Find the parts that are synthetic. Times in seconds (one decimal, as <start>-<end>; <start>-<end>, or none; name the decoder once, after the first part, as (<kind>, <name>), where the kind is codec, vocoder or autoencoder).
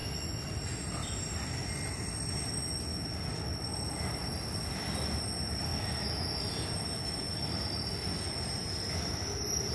none